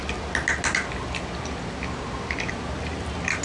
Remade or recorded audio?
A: recorded